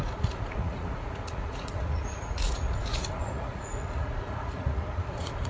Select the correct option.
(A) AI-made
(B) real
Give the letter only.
A